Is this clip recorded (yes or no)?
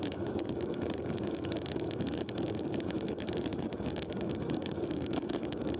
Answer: no